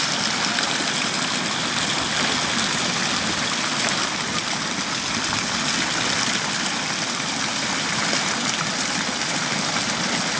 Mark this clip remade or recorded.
recorded